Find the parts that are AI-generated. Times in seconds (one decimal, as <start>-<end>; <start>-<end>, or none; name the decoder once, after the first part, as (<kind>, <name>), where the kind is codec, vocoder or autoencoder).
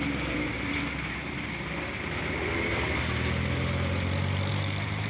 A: 4.5-5.1 (vocoder, BigVGAN v2)